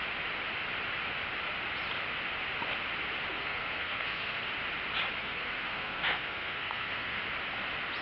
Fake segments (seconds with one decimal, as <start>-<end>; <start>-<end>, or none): 3.3-4.4; 5.2-7.2